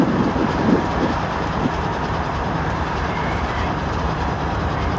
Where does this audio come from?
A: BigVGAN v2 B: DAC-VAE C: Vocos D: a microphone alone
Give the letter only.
A